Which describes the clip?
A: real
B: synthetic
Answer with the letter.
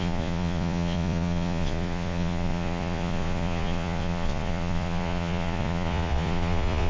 B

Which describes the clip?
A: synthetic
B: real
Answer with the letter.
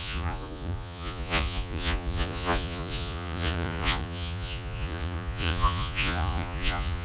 A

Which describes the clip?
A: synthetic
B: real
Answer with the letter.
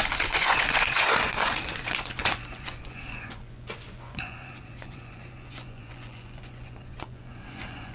A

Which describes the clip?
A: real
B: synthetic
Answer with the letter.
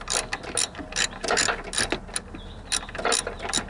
A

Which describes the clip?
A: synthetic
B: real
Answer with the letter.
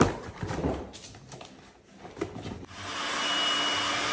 B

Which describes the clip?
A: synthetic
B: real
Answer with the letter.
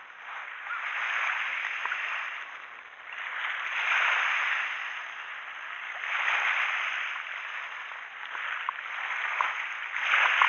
B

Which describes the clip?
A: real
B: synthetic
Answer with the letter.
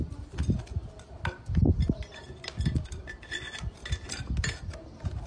A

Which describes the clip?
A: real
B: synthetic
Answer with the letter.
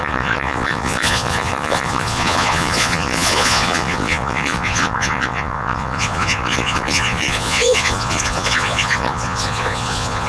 B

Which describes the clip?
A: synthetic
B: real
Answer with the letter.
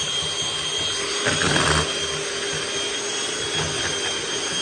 B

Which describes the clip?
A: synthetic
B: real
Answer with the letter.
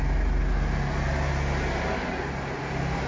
B